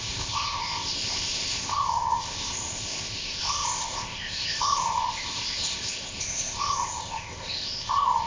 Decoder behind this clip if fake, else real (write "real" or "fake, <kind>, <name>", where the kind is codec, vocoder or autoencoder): fake, codec, ZipCodec